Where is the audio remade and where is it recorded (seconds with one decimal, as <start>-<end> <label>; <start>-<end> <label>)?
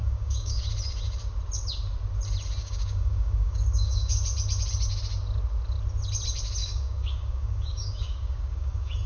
0.0-0.6 remade; 0.6-2.6 recorded; 2.6-4.1 remade; 4.1-6.6 recorded; 6.6-9.1 remade